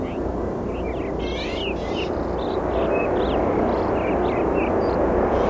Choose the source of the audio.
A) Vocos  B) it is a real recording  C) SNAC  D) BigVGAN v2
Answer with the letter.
B